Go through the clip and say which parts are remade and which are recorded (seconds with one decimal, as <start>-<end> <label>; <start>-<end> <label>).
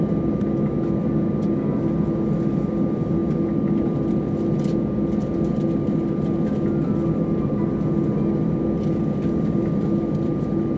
0.0-10.8 recorded